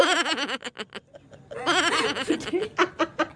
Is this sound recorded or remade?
recorded